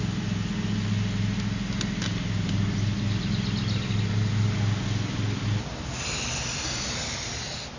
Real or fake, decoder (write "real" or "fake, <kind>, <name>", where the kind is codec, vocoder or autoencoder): real